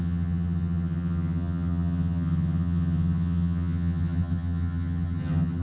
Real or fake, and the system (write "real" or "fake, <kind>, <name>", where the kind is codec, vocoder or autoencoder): fake, vocoder, HiFi-GAN